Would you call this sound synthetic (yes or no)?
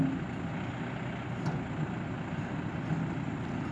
no